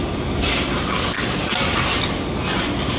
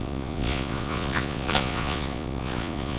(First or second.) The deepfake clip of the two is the second